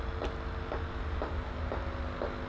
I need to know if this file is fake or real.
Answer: real